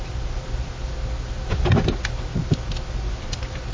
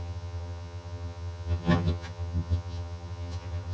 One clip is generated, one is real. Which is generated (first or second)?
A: second